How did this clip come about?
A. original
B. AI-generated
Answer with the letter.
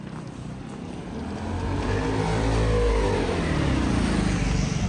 A